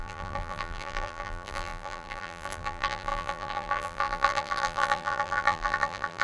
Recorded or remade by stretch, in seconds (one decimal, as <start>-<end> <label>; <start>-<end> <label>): 0.0-6.2 remade